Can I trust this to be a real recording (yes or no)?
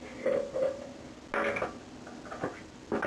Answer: yes